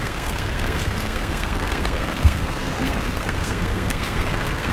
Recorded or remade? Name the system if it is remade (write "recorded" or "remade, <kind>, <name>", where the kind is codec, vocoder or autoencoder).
remade, codec, SNAC